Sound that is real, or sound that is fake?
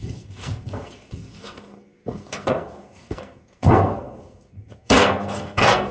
fake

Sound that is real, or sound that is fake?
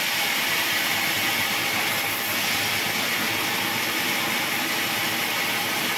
real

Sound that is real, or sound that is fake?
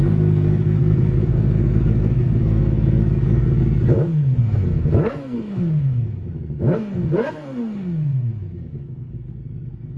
fake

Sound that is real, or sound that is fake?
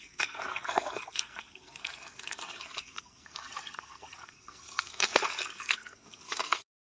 fake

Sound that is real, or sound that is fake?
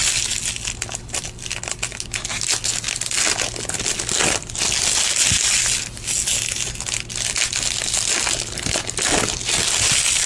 real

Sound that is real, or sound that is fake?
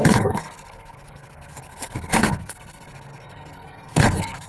fake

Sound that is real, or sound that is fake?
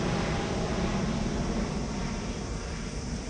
real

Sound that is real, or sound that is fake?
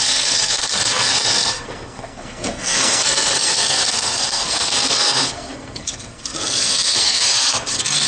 fake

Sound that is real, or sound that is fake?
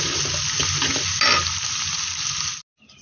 real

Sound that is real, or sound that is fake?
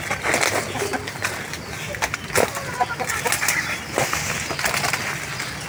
real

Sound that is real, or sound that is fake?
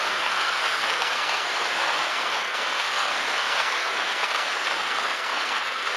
fake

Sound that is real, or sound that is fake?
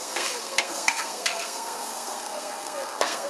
fake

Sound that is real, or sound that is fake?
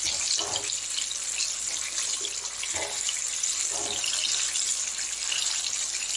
real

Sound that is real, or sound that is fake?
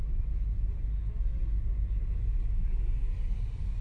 real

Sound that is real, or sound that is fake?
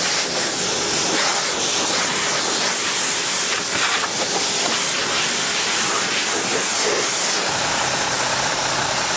real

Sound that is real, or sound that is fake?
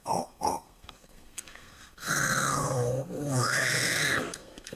fake